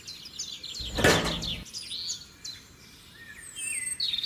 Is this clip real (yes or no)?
yes